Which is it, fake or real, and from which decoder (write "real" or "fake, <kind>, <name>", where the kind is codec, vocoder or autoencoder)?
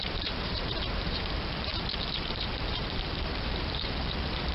fake, vocoder, BigVGAN v2